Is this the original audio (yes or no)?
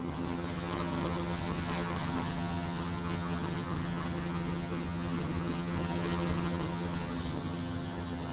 no